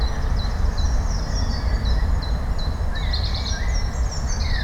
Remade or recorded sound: recorded